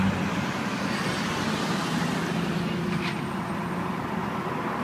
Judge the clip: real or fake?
real